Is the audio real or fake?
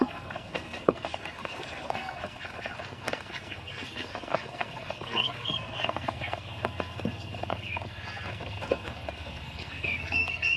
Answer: fake